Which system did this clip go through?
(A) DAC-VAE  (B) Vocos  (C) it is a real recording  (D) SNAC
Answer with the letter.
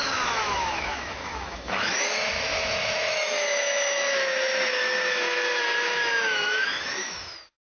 A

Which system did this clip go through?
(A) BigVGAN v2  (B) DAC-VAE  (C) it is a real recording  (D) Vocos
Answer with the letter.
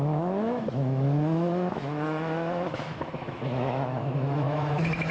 B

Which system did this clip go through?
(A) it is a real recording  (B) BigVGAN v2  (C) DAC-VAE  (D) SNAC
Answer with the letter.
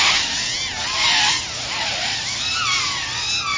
A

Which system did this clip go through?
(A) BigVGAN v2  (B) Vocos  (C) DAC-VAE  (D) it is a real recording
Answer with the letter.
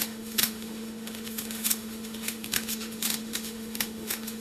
C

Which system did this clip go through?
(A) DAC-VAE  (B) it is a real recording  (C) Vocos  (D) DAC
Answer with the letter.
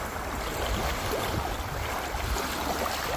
B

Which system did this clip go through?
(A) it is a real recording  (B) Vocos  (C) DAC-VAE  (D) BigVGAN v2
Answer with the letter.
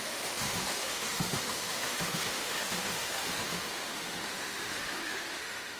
C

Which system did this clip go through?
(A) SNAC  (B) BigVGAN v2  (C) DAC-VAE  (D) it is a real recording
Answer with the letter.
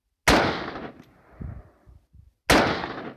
D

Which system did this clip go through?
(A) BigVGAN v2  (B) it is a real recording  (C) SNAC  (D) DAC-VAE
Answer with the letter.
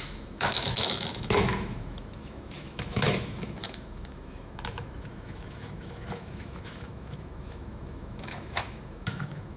D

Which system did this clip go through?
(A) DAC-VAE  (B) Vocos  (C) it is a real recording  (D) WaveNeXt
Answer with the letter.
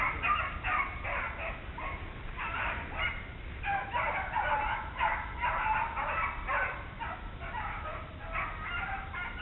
C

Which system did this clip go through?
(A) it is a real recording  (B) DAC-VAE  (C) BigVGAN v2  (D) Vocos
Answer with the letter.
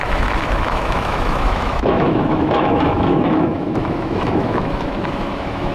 B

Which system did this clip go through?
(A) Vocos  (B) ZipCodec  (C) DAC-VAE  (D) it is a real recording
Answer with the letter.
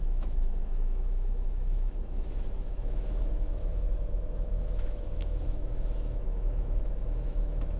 C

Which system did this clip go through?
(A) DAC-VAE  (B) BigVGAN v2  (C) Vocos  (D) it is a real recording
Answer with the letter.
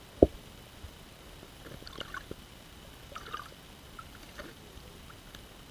D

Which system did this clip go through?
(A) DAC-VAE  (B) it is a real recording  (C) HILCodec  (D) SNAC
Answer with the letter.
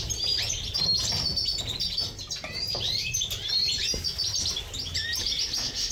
B